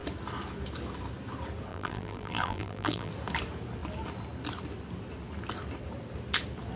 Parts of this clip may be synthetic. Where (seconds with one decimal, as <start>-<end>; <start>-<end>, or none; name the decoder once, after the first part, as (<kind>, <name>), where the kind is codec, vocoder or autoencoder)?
1.7-3.1 (vocoder, BigVGAN v2)